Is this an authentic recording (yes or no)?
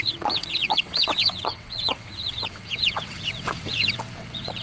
no